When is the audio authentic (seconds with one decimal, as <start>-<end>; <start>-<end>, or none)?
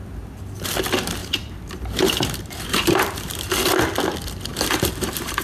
0.0-1.2; 3.4-4.5